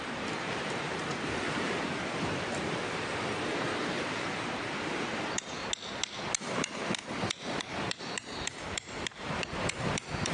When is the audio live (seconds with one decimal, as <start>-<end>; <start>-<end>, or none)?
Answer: 1.4-2.0; 5.6-6.4